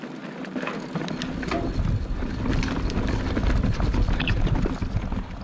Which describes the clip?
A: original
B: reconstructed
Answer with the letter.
A